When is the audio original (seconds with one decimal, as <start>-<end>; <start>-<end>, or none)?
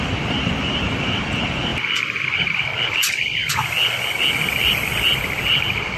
none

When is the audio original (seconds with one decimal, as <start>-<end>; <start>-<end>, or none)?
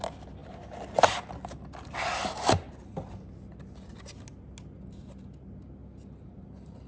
0.0-6.9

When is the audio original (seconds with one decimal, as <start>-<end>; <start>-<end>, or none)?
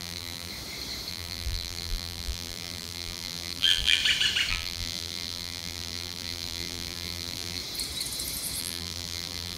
0.5-1.1; 4.0-4.5; 7.6-8.6